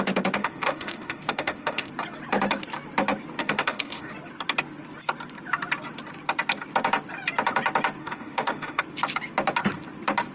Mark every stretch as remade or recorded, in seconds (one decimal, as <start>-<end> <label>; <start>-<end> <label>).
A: 0.0-0.4 recorded; 0.4-1.9 remade; 1.9-3.4 recorded; 3.4-4.1 remade; 4.1-8.0 recorded; 8.0-8.8 remade; 8.8-10.3 recorded